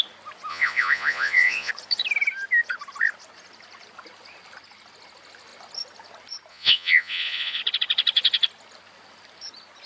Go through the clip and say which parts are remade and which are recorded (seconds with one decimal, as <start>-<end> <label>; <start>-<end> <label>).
0.0-0.5 recorded; 0.5-1.7 remade; 1.7-6.5 recorded; 6.5-7.6 remade; 7.6-9.9 recorded